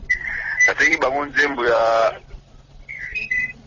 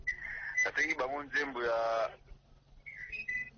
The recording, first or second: second